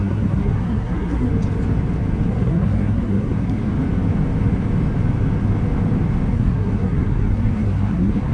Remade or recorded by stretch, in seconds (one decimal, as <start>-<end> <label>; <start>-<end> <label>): 0.0-1.3 remade; 1.3-2.3 recorded; 2.3-3.7 remade; 3.7-6.3 recorded; 6.3-8.3 remade